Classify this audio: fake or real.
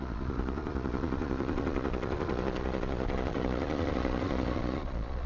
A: fake